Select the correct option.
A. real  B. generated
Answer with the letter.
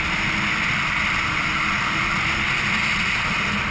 B